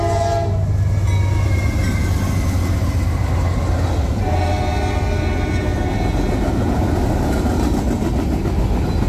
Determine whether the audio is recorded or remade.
recorded